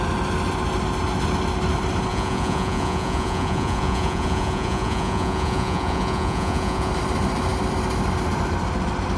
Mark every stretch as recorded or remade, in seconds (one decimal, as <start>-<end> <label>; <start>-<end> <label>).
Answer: 0.0-2.1 recorded; 2.1-6.9 remade; 6.9-9.2 recorded